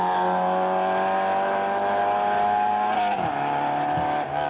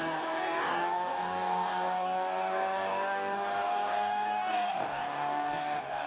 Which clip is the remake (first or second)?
second